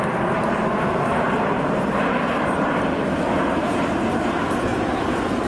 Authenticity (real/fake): real